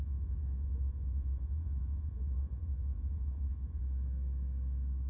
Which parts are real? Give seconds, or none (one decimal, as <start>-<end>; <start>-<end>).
3.8-5.1